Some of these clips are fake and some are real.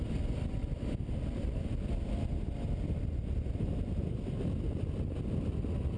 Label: fake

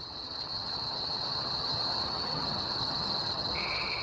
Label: fake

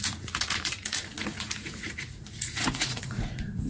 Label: fake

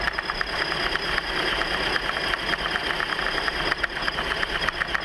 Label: real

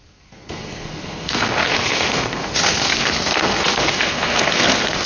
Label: fake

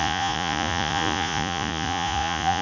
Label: fake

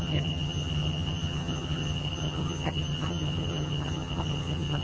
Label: fake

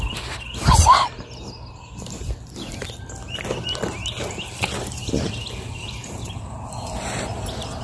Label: real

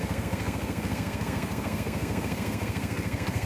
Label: fake